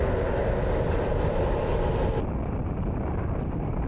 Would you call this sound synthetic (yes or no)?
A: no